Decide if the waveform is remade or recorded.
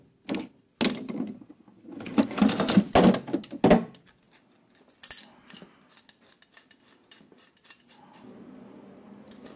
recorded